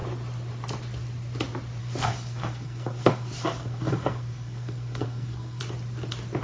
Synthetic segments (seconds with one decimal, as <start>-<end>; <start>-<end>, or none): 1.8-5.6